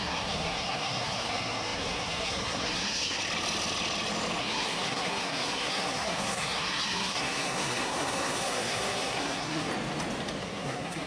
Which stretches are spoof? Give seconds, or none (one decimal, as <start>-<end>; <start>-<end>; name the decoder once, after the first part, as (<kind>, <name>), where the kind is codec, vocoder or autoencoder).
0.0-3.2 (codec, SNAC); 4.4-9.7; 10.4-11.1